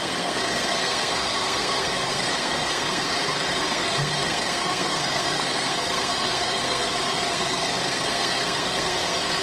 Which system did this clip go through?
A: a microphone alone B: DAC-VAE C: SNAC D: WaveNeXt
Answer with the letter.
C